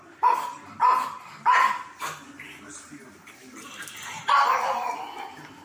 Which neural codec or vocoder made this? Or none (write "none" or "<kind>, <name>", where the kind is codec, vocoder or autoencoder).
vocoder, BigVGAN v2